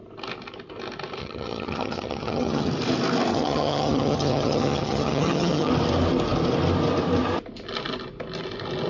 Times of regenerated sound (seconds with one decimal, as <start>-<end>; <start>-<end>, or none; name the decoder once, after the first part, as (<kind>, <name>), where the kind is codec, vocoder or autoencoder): 1.2-2.7 (vocoder, HiFi-GAN); 3.3-5.7